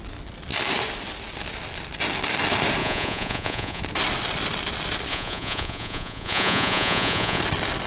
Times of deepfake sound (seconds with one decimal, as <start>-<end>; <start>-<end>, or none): 2.8-3.8; 5.1-7.4